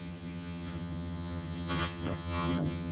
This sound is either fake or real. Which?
fake